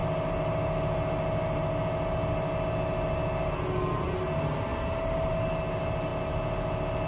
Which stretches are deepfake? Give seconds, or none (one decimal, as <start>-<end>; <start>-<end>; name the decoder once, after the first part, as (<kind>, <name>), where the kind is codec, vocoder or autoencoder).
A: none